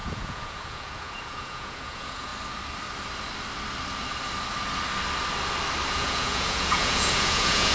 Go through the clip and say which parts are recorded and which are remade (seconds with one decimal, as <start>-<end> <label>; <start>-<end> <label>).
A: 0.0-2.3 remade; 2.3-5.9 recorded; 5.9-7.7 remade